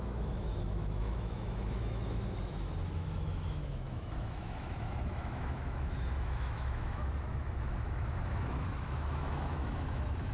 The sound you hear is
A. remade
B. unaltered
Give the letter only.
A